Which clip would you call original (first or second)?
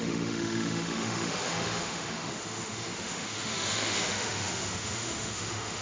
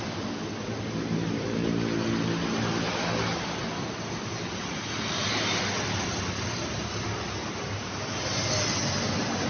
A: second